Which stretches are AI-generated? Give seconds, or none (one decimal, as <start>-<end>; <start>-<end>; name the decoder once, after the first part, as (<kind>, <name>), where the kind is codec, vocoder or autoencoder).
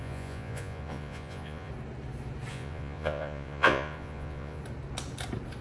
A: 0.0-1.7 (vocoder, Vocos); 2.5-4.6